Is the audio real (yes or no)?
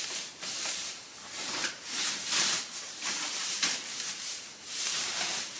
no